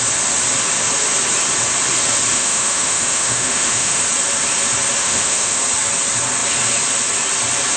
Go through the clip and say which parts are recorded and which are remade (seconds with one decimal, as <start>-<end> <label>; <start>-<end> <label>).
0.0-2.3 recorded; 2.3-4.0 remade; 4.0-5.0 recorded; 5.0-5.6 remade; 5.6-7.8 recorded